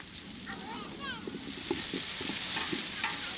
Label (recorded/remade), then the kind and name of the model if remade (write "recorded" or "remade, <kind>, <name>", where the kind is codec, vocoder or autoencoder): recorded